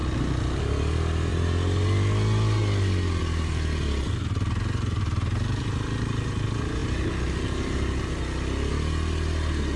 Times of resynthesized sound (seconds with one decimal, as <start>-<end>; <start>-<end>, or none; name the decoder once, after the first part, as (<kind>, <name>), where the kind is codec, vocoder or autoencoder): none